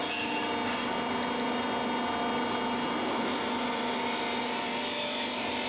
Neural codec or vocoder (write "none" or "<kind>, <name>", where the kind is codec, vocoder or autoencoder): none